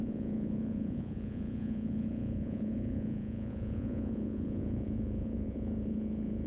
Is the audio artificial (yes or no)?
yes